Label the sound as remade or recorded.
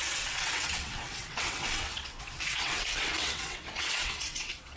remade